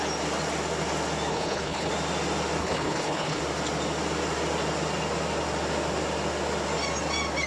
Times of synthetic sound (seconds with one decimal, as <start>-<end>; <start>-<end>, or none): 1.3-1.9; 2.6-3.4

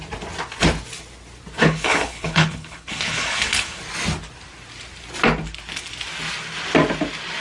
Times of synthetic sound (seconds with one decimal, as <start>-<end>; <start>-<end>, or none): 1.6-3.8

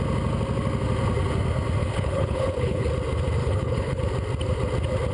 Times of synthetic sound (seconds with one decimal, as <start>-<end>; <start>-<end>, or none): 1.8-2.9; 3.4-4.0

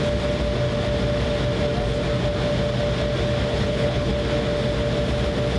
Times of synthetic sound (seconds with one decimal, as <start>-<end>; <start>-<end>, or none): 3.5-4.1

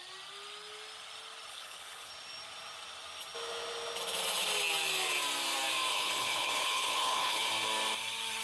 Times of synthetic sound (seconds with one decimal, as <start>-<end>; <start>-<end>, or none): 1.5-2.1; 5.9-7.5